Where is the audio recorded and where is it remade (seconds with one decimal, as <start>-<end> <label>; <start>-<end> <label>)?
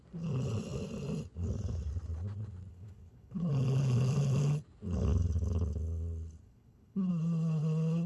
0.0-2.7 recorded; 2.7-3.5 remade; 3.5-6.4 recorded; 6.4-7.1 remade; 7.1-8.1 recorded